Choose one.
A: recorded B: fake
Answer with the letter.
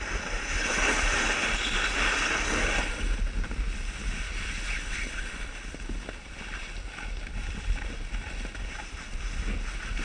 A